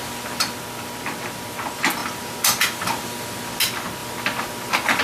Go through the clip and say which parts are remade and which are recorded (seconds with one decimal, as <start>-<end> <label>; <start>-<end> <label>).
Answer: 0.0-5.0 recorded